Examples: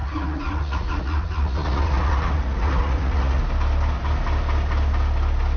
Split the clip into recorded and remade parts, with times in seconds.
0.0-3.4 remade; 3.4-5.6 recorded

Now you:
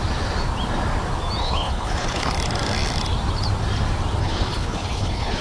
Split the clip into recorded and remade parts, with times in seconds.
0.0-1.4 recorded; 1.4-2.3 remade; 2.3-4.2 recorded; 4.2-5.4 remade

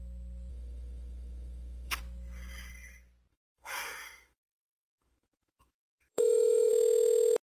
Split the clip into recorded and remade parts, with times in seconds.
0.0-0.5 recorded; 0.5-2.0 remade; 2.0-3.3 recorded; 3.3-6.7 remade; 6.7-7.5 recorded

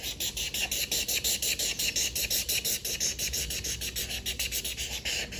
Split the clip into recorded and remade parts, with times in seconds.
0.0-5.4 recorded

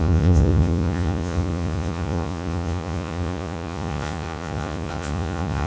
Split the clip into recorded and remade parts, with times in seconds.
0.0-5.7 remade

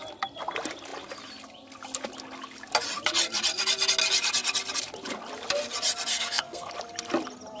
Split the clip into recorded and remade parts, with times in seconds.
0.0-6.1 recorded; 6.1-6.7 remade; 6.7-7.6 recorded